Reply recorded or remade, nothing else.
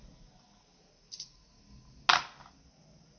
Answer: recorded